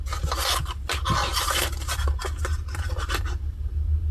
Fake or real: real